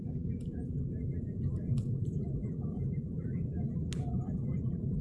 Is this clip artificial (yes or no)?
yes